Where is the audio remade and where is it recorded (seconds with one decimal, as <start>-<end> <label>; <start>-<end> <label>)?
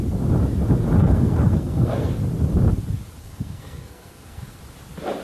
0.0-1.0 recorded; 1.0-2.1 remade; 2.1-3.2 recorded; 3.2-4.6 remade; 4.6-5.2 recorded